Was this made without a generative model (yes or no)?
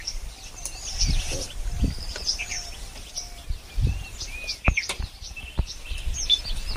yes